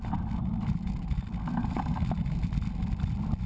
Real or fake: real